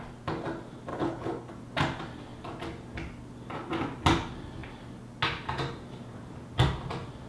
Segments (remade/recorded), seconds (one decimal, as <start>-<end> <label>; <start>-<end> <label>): 0.0-0.9 recorded; 0.9-1.5 remade; 1.5-7.3 recorded